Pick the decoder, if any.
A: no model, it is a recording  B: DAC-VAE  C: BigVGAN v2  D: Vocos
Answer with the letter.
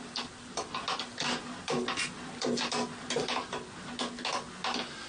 A